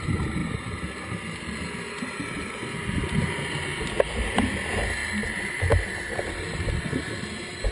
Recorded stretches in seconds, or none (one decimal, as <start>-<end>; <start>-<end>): none